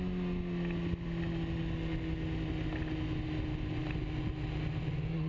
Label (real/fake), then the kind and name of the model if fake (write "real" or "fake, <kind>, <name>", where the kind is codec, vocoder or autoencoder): real